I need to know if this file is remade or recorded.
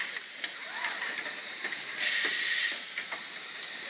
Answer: recorded